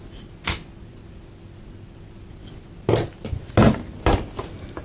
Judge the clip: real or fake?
real